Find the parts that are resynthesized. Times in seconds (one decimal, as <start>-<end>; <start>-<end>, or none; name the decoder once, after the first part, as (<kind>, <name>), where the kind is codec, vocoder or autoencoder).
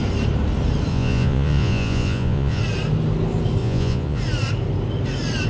0.9-2.6 (vocoder, Vocos); 3.6-4.2